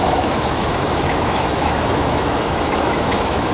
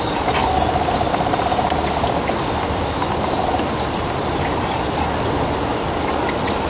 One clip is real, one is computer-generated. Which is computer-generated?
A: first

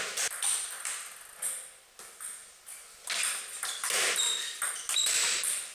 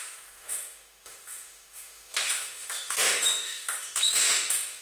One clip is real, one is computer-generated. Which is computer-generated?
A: second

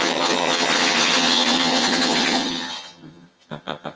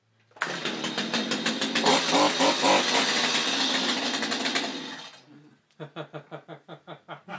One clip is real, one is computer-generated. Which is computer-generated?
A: first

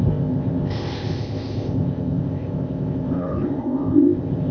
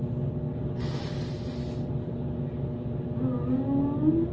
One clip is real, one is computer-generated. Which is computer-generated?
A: first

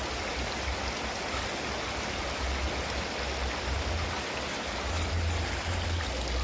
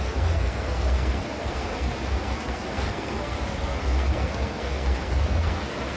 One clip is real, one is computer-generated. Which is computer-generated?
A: second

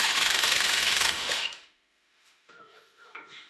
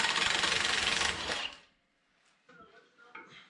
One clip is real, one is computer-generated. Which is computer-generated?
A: first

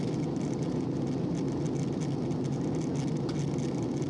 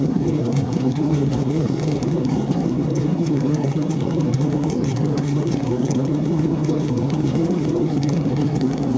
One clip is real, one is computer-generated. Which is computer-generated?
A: second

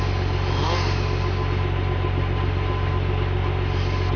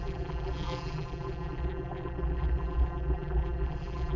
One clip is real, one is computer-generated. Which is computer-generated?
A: second